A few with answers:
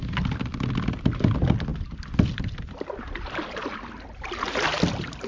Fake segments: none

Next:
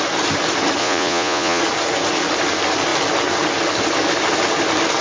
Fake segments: 0.8-1.6 (vocoder, Vocos)

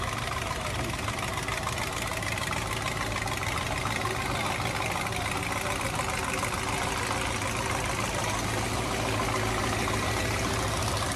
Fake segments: none